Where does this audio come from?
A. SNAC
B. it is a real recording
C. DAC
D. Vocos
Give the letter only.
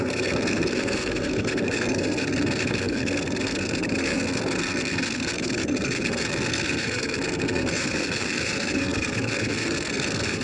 A